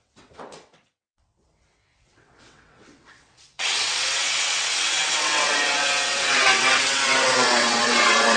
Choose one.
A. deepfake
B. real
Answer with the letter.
A